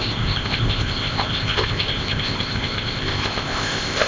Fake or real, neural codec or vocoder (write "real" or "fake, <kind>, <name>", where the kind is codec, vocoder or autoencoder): fake, codec, ZipCodec